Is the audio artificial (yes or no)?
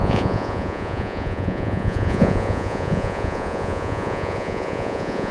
yes